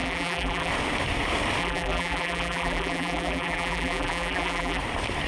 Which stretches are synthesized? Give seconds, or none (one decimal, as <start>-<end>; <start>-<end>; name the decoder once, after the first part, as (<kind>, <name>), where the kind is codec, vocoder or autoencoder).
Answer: 0.0-0.7 (vocoder, BigVGAN v2); 1.6-4.8